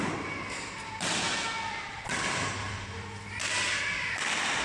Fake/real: real